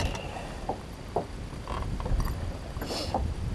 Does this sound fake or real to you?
real